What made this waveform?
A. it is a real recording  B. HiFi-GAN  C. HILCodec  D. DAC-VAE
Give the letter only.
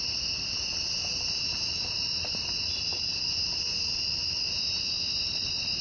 A